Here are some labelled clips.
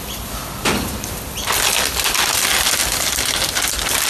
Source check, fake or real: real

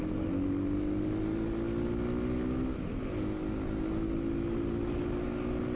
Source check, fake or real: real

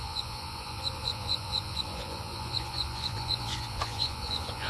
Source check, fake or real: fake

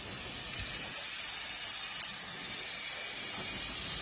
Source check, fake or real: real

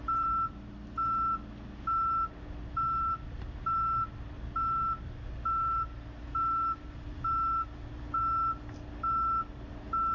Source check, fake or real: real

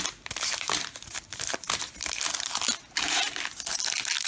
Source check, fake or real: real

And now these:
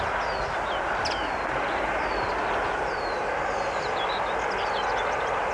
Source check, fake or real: real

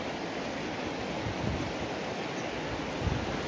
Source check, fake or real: real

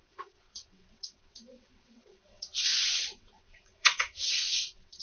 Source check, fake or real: fake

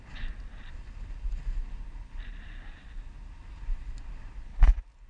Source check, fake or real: real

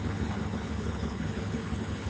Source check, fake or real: fake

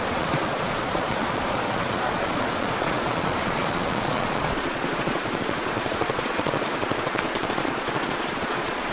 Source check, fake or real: fake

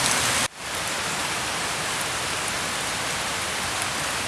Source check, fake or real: real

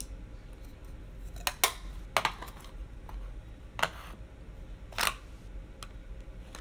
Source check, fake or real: real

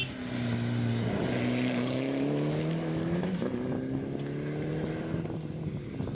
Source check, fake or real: real